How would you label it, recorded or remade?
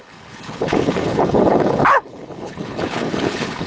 remade